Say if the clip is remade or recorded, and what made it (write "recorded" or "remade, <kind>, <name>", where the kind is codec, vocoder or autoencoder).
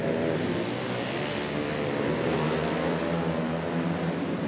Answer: recorded